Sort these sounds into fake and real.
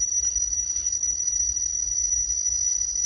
real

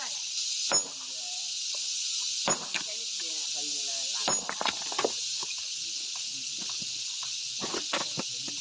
real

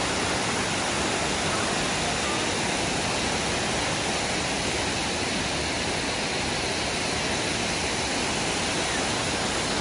real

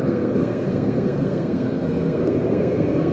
fake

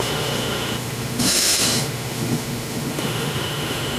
fake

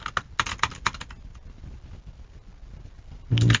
real